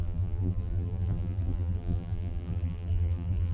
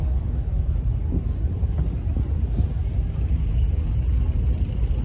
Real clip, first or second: second